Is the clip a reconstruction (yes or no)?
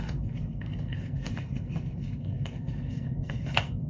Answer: yes